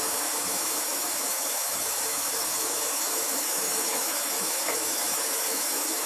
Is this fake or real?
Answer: fake